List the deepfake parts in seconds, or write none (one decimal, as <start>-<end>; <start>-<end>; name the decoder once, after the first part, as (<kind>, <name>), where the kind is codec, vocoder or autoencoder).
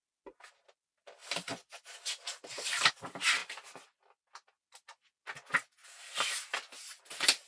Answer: none